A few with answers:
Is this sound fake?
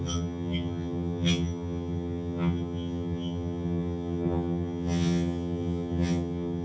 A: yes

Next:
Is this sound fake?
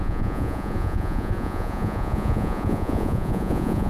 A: yes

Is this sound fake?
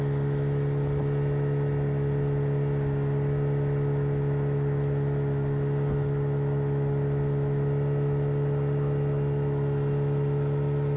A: no